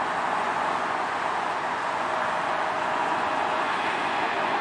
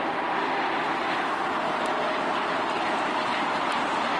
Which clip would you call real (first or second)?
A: second